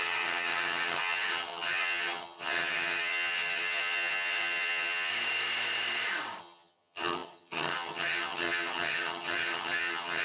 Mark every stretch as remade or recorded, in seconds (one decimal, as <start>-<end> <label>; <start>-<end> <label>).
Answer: 0.0-5.1 remade; 5.1-6.4 recorded; 6.4-10.2 remade